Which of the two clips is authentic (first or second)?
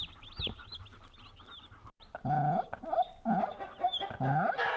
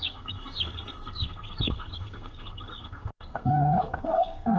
first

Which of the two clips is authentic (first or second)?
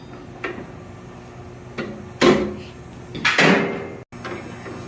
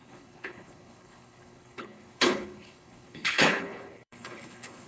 first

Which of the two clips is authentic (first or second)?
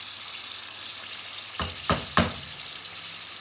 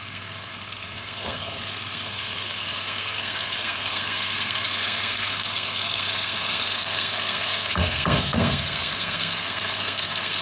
first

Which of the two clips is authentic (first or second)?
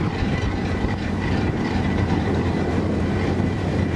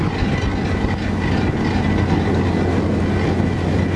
second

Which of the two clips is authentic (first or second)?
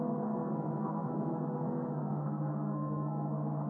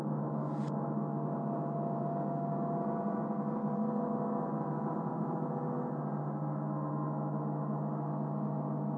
second